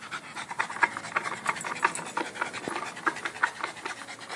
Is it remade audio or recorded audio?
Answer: recorded